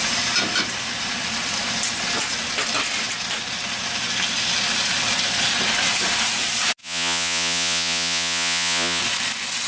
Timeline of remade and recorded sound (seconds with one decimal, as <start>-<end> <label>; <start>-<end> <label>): 0.0-6.8 recorded; 6.8-9.0 remade; 9.0-9.7 recorded